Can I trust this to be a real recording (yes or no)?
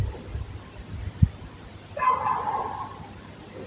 yes